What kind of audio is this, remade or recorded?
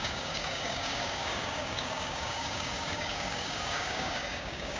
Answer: remade